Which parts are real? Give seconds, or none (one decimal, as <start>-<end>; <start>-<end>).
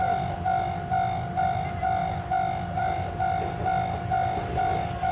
0.0-5.1